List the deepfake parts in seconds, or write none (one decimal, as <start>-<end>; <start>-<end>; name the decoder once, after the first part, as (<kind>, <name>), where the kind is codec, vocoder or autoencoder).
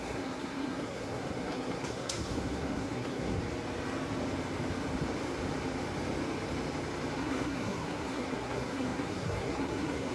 0.0-3.4 (codec, SNAC); 7.2-10.1